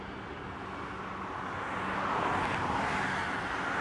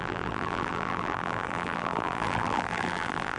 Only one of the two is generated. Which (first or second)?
second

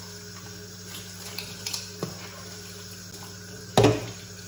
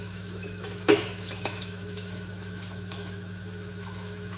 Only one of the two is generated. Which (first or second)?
second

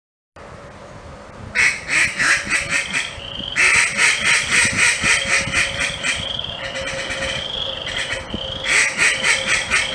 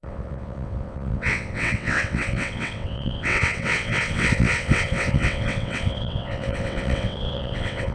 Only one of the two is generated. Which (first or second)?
second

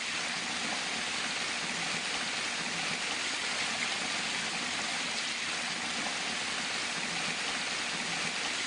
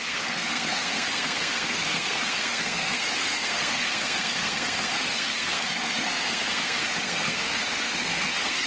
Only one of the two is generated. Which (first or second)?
second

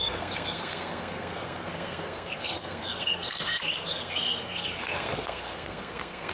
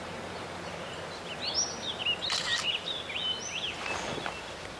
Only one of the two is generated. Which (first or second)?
first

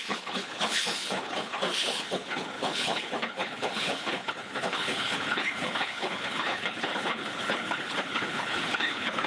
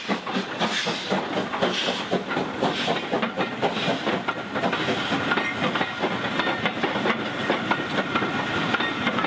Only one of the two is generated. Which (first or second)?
first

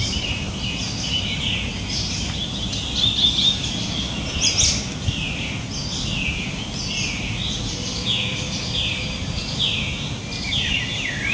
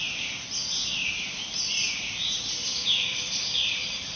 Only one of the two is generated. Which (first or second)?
second